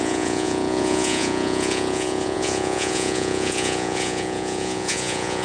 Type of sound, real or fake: fake